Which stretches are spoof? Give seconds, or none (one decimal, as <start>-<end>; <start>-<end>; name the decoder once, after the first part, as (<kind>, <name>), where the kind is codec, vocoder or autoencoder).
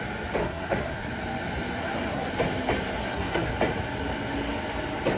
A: 0.4-1.1 (codec, SNAC); 1.8-2.3; 3.0-3.5